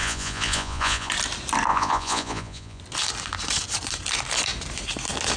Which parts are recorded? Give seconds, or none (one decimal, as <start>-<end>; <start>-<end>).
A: 1.1-1.7; 2.8-5.4

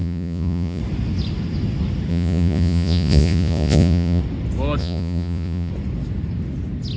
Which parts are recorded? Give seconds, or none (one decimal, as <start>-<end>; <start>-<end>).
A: 0.8-2.1; 4.2-4.8; 5.7-7.0

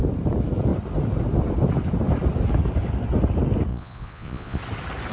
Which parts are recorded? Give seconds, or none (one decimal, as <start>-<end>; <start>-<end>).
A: 0.0-3.7; 4.6-5.1

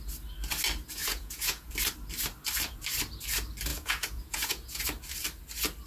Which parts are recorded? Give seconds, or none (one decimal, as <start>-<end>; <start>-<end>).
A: 0.0-1.0; 1.7-3.7; 4.8-5.9

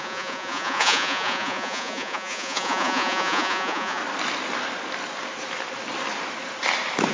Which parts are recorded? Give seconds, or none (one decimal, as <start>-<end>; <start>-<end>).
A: 4.0-7.1

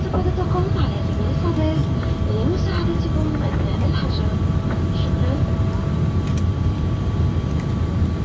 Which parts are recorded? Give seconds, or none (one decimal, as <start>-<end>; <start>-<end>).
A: 0.0-8.2

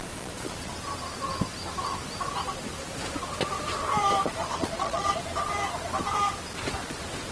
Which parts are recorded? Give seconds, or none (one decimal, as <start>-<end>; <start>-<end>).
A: 0.7-4.4; 5.2-7.3

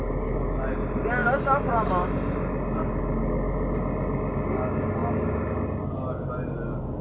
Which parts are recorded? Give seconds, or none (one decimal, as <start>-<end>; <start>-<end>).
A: 0.0-7.0